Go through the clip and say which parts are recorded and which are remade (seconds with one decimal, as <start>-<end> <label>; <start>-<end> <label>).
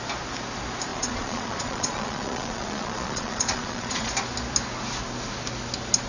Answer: 0.0-0.9 recorded; 0.9-4.1 remade; 4.1-6.1 recorded